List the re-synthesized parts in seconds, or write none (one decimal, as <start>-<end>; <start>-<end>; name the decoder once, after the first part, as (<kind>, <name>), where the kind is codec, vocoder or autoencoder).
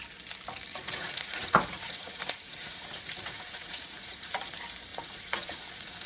0.7-4.4 (vocoder, Vocos); 4.9-6.1